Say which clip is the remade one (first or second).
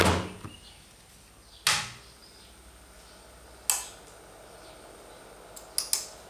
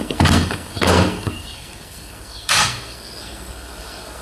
second